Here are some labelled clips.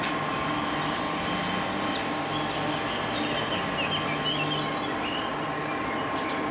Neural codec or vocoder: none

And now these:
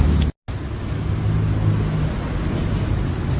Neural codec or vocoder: none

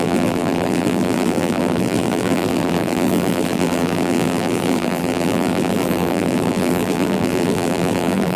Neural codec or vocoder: vocoder, BigVGAN v2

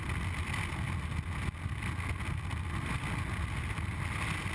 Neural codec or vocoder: none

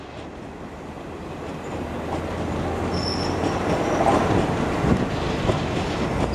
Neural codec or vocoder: none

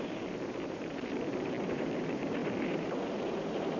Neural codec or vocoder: vocoder, BigVGAN v2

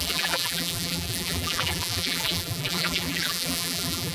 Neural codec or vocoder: vocoder, BigVGAN v2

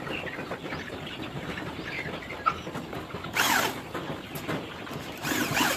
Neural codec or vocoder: none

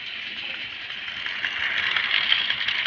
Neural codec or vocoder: none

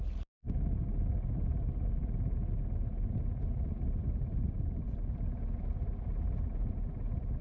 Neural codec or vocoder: none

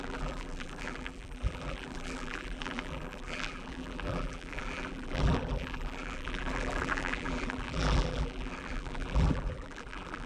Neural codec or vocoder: vocoder, BigVGAN v2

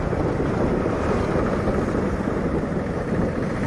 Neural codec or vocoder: none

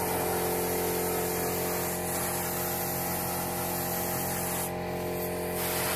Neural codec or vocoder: none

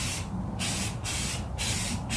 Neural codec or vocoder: vocoder, BigVGAN v2